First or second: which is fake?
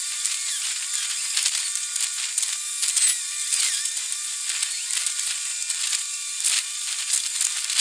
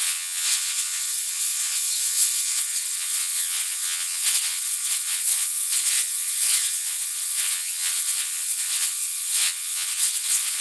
second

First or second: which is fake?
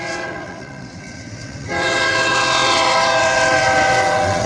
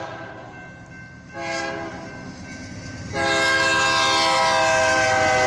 first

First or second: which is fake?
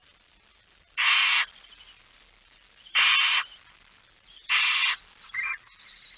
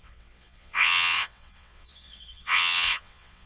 second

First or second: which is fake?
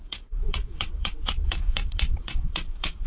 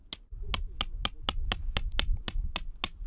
first